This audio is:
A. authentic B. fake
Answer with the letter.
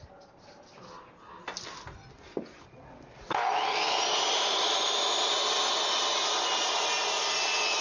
A